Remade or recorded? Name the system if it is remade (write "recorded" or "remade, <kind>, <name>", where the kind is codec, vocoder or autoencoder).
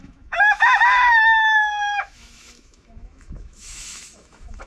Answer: remade, autoencoder, DAC-VAE